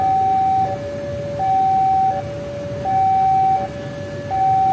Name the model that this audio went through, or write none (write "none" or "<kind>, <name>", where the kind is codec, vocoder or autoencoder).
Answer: none